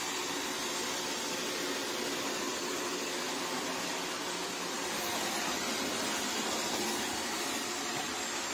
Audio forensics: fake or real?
real